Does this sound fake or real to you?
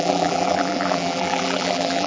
fake